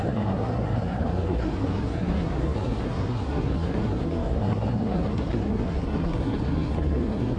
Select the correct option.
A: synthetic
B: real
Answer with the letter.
A